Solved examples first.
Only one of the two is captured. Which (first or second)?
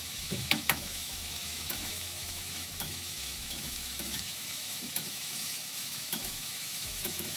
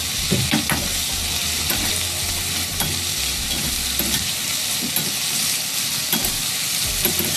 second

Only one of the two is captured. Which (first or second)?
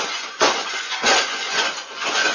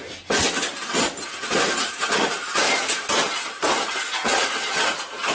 second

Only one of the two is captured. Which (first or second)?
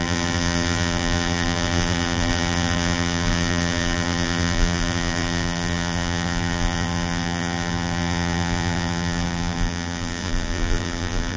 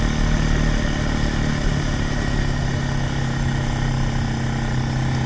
second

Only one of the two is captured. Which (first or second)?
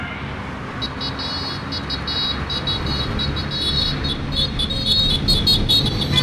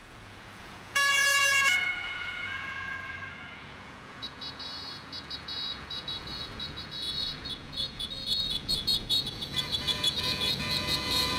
first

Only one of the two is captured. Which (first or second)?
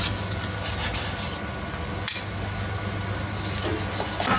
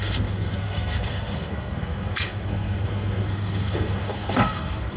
first